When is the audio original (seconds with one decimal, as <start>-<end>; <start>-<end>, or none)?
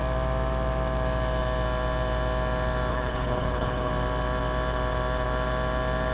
0.0-2.9; 3.9-6.1